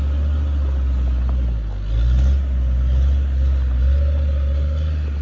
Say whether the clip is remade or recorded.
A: recorded